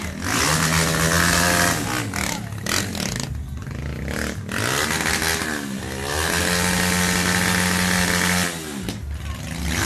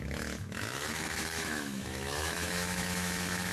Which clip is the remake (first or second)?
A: second